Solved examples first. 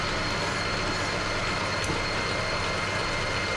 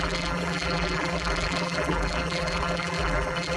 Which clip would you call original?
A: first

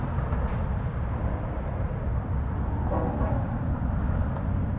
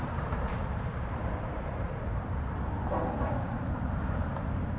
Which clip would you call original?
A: first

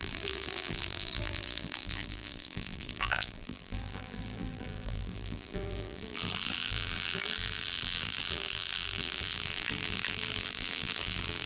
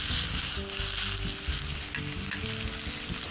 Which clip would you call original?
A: second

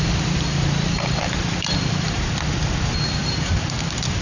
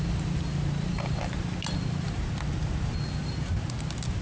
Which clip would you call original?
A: second